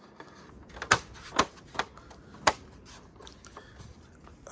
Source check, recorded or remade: recorded